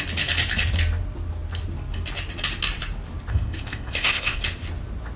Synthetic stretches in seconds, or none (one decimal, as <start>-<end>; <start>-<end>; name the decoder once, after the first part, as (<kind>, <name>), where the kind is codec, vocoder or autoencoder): 3.3-4.4 (codec, ZipCodec)